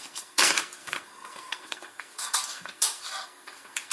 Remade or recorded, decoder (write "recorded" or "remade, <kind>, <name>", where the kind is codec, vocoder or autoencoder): remade, codec, SNAC